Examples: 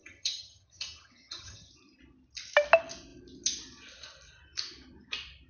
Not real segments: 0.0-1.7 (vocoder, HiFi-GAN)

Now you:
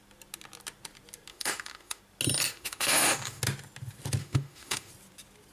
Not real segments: 1.3-2.0 (autoencoder, DAC-VAE); 2.5-3.4; 4.2-4.9